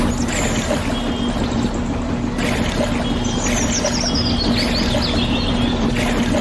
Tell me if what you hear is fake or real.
real